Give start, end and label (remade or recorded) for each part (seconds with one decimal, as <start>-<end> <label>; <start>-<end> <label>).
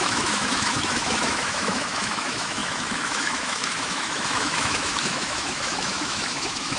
0.0-6.8 remade